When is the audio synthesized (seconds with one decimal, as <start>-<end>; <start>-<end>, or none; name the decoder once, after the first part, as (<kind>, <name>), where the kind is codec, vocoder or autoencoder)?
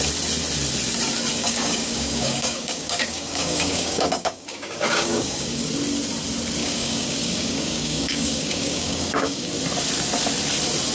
1.3-5.7 (codec, DAC); 6.6-9.5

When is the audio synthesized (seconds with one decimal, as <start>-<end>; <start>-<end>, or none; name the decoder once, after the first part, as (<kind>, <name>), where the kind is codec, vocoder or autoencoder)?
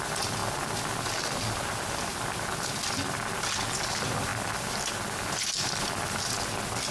none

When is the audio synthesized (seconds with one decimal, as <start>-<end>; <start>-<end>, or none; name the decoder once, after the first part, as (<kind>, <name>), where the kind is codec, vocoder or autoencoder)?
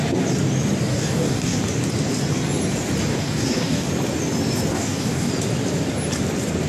0.9-1.6 (codec, DAC); 3.1-3.9; 4.7-5.3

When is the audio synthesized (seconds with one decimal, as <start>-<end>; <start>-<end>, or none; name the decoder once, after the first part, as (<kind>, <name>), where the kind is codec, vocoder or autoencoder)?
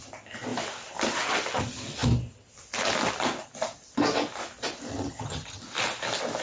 4.9-5.6 (vocoder, HiFi-GAN)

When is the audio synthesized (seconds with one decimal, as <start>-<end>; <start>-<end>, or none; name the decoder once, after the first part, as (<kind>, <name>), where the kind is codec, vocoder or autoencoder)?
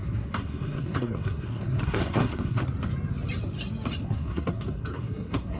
0.0-2.6 (codec, SNAC); 4.0-5.6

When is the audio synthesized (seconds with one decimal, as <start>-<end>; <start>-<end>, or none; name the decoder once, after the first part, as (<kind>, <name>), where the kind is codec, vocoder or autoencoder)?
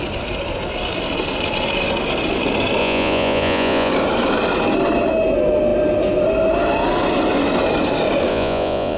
2.8-3.9 (vocoder, Vocos); 8.3-9.0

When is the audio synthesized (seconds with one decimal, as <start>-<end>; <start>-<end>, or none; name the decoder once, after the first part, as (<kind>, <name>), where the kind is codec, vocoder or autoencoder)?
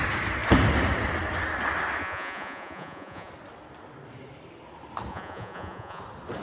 2.0-3.3 (vocoder, Vocos); 5.1-6.0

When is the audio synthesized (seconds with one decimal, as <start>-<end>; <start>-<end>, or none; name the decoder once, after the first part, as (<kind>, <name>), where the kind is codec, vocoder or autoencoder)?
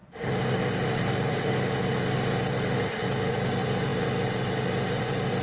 none